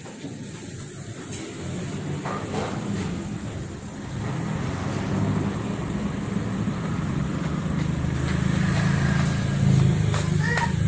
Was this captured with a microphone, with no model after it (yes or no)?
yes